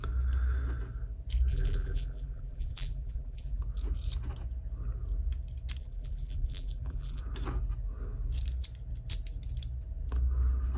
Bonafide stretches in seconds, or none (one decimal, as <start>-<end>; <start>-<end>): 0.0-1.5; 3.6-5.8; 7.2-10.8